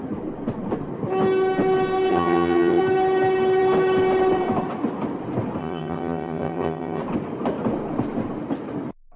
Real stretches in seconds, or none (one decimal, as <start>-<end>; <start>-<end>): 0.0-2.1; 2.8-5.6; 7.0-9.2